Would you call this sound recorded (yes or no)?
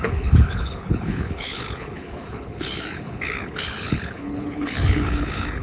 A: no